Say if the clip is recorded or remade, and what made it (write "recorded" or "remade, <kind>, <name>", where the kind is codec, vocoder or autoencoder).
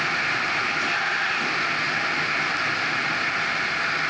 recorded